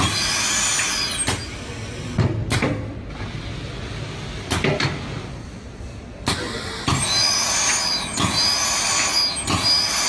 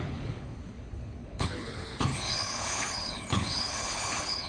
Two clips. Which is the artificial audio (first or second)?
second